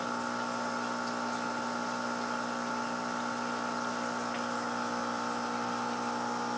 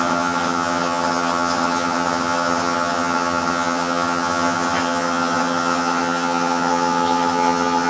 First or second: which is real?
first